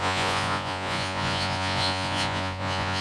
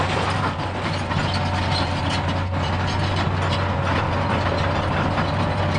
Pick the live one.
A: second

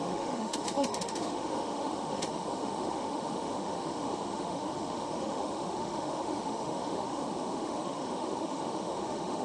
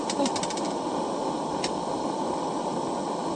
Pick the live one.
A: second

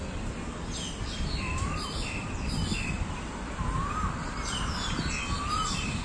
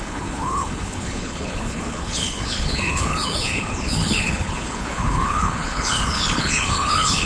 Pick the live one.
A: first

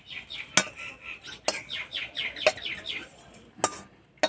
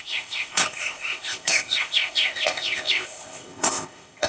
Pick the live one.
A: first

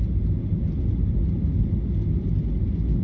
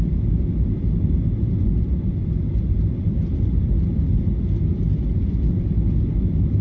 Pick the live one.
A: first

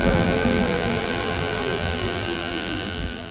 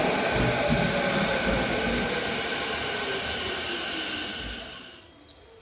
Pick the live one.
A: second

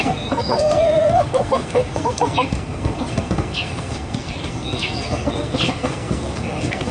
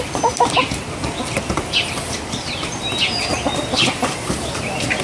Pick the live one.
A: second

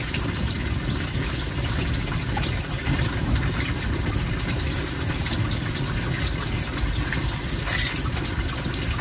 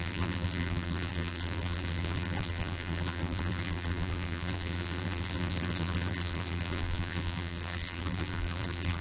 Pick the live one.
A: first